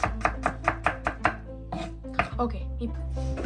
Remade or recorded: recorded